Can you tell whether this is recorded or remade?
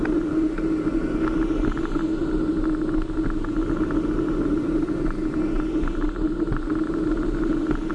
recorded